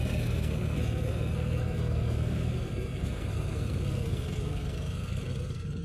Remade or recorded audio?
remade